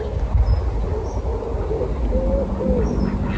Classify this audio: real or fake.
real